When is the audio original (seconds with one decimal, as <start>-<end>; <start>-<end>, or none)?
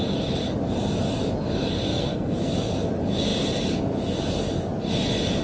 0.0-1.9; 2.5-5.4